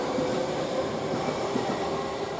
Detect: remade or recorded recorded